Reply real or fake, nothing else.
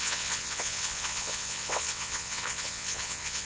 fake